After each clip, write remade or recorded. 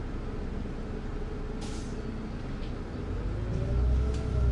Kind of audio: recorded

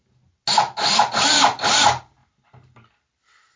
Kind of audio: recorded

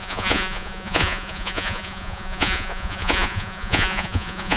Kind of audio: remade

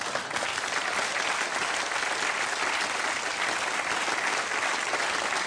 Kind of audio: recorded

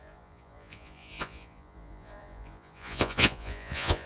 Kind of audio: remade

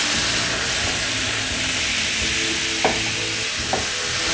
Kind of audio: recorded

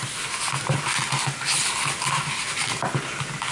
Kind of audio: recorded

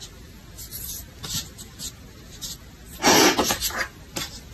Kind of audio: recorded